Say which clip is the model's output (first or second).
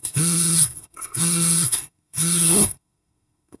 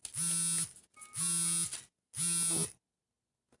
first